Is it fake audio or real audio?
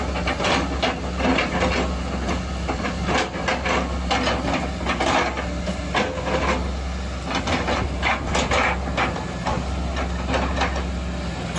real